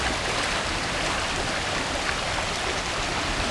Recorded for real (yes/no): yes